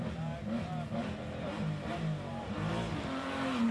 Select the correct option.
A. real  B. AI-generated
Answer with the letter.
A